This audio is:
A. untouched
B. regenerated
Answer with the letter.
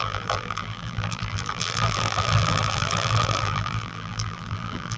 B